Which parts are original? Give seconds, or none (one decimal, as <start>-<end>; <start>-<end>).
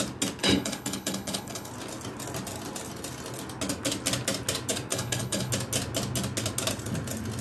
0.0-0.4; 1.7-4.9; 5.5-7.4